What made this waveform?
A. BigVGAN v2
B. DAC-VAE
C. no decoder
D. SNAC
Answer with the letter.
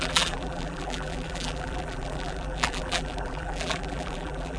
A